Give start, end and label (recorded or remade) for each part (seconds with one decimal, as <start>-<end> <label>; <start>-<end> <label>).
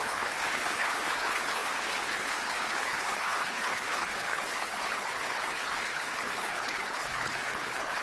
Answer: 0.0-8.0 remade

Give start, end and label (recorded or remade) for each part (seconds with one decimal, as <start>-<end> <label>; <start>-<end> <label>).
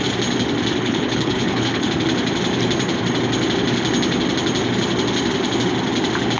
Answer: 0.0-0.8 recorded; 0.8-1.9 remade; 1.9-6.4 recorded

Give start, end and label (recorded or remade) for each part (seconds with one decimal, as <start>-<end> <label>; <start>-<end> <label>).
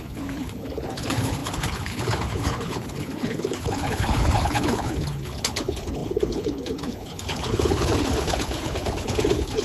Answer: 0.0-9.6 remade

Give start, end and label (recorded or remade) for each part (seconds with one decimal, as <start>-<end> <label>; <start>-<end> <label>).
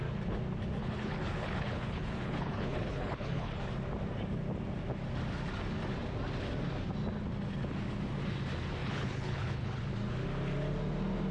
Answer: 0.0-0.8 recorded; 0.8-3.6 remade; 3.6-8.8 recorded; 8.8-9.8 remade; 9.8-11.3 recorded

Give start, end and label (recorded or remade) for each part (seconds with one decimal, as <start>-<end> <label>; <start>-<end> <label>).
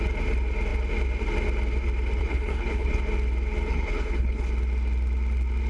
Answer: 0.0-2.2 recorded; 2.2-3.0 remade; 3.0-3.7 recorded; 3.7-4.5 remade; 4.5-5.7 recorded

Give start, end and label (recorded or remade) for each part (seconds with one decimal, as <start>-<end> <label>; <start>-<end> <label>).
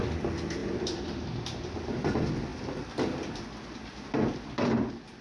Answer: 0.0-5.2 recorded